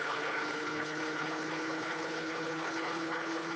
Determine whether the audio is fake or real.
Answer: fake